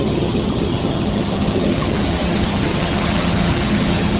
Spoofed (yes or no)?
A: yes